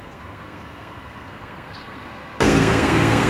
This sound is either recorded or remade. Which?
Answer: remade